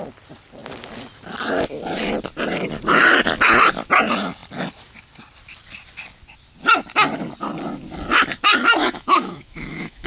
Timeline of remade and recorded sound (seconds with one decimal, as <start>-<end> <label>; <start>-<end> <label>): 0.0-8.8 recorded; 8.8-10.1 remade